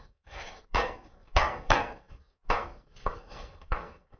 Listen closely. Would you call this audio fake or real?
fake